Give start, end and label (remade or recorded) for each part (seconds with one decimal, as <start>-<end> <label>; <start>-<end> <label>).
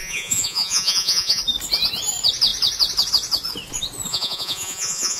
0.0-1.4 remade; 1.4-4.1 recorded; 4.1-5.2 remade